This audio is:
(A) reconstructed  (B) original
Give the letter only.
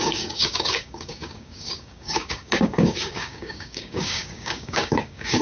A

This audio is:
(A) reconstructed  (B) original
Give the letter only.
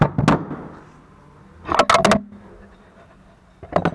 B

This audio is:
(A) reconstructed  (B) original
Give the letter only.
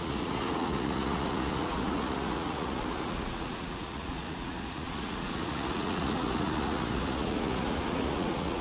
A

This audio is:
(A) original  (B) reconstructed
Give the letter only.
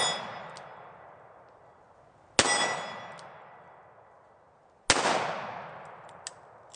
A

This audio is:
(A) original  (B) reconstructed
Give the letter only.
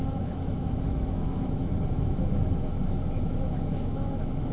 B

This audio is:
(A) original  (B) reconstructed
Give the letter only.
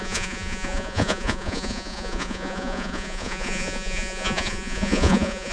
B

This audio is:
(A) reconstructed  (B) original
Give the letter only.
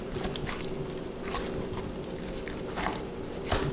B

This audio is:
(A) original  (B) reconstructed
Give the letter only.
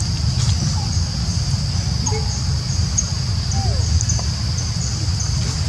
A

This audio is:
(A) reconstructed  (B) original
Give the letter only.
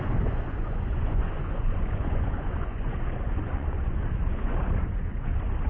A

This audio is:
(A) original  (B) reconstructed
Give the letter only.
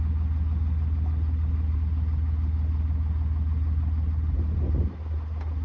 A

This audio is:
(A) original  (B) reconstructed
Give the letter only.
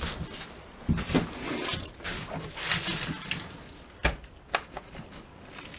A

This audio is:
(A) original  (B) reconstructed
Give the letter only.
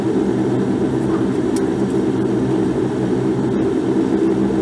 A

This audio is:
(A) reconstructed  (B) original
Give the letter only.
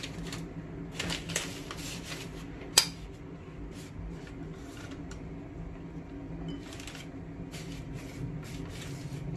B